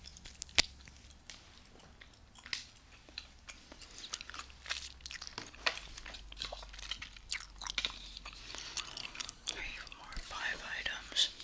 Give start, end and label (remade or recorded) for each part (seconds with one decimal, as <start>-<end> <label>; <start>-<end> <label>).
0.0-9.0 recorded; 9.0-9.6 remade; 9.6-11.4 recorded